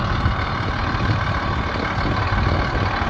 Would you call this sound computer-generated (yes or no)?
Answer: yes